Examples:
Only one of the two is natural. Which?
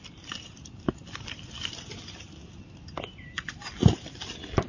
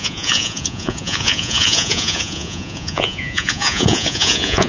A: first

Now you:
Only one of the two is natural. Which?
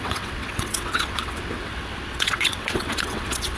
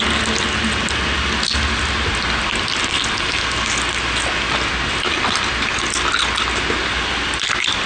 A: second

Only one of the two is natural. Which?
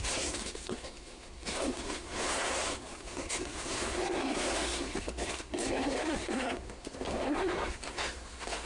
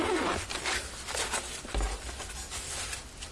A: second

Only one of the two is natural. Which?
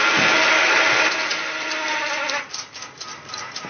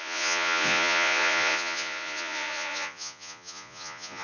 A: first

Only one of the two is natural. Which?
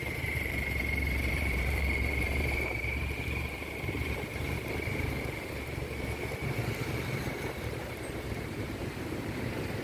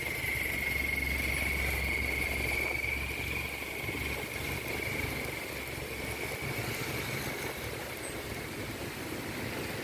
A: second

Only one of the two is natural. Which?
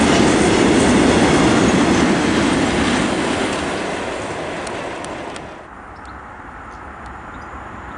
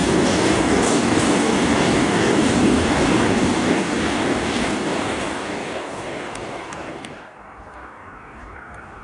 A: first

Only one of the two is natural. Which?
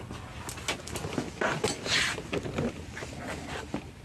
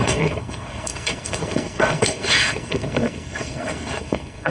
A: first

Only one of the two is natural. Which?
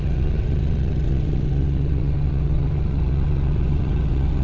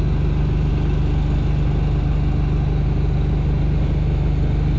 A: second